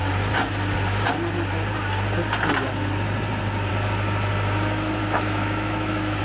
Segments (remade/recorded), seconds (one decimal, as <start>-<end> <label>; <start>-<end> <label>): 0.0-5.0 recorded; 5.0-6.2 remade